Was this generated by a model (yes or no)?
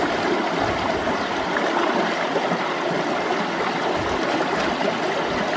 no